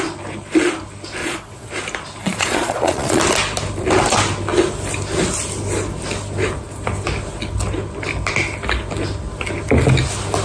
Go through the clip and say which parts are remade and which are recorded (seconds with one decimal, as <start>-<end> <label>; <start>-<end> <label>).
0.0-1.2 recorded; 1.2-1.7 remade; 1.7-2.2 recorded; 2.2-3.2 remade; 3.2-10.4 recorded